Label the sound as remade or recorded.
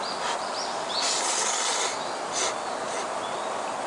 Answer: recorded